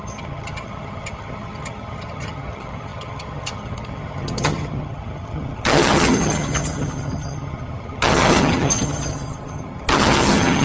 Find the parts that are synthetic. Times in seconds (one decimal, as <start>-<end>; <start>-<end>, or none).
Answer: 0.0-10.6

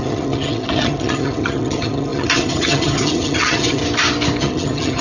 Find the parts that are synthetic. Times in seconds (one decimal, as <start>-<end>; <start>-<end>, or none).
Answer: 0.0-3.8; 4.4-5.0

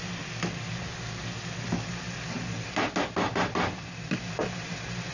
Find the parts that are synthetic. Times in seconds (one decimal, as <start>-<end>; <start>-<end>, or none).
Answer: none